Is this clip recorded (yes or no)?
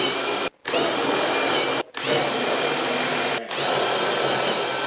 yes